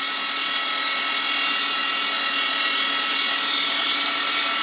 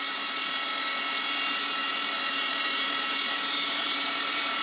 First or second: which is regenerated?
second